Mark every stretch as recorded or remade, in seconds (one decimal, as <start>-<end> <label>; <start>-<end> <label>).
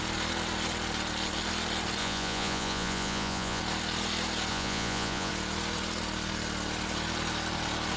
0.0-2.0 recorded; 2.0-3.6 remade; 3.6-4.5 recorded; 4.5-5.3 remade; 5.3-8.0 recorded